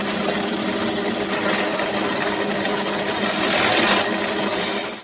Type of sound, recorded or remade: recorded